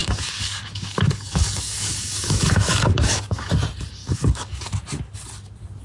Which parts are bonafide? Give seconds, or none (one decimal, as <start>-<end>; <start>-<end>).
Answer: 3.5-4.0; 4.7-5.8